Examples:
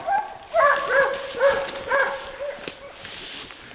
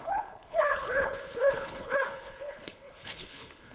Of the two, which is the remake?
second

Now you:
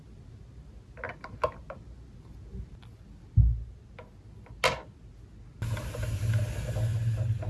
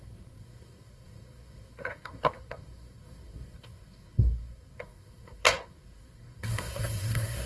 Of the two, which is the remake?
second